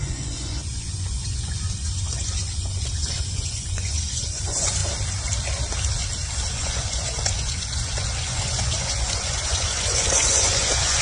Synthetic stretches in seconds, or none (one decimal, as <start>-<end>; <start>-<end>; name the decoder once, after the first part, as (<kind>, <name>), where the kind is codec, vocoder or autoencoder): 0.0-4.8 (vocoder, Vocos); 6.5-11.0